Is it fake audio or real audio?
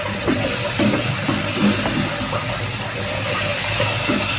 real